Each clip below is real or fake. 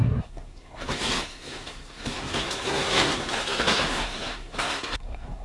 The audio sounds fake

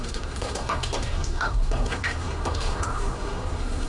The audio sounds fake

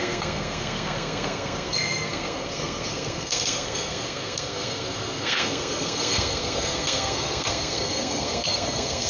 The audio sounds fake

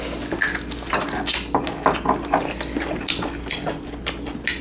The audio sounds real